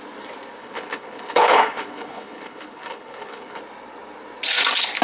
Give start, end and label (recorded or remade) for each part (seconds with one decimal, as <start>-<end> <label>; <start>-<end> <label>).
0.0-0.6 recorded; 0.6-3.6 remade; 3.6-5.0 recorded